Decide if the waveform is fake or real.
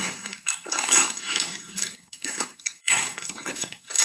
fake